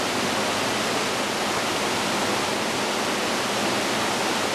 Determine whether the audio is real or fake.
real